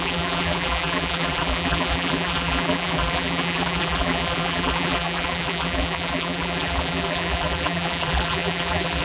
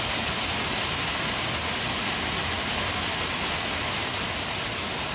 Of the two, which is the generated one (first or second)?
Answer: first